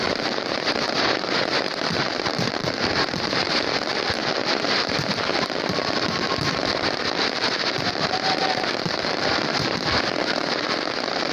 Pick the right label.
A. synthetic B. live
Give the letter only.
A